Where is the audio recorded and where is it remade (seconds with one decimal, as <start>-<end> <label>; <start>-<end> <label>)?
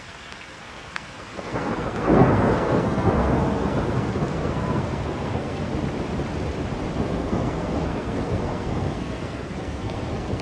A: 0.0-5.7 remade; 5.7-7.0 recorded; 7.0-10.4 remade